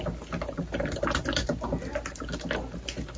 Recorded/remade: recorded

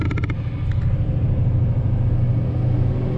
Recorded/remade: recorded